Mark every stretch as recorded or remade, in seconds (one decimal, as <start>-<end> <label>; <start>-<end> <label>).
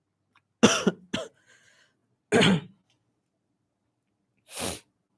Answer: 0.0-5.2 recorded